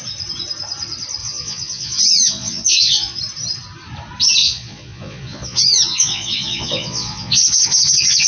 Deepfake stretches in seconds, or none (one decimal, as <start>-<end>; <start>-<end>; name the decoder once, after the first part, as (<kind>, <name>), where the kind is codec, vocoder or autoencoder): 1.2-3.2 (vocoder, Vocos); 4.4-8.3